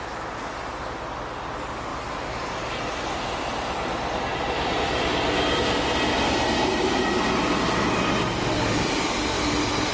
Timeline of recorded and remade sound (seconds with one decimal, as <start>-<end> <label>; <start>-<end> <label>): 0.0-9.9 recorded